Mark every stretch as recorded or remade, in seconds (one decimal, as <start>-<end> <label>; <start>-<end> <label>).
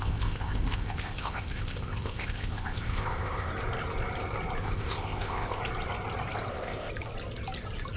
0.0-3.5 remade; 3.5-4.6 recorded; 4.6-5.6 remade; 5.6-6.5 recorded; 6.5-6.9 remade; 6.9-8.0 recorded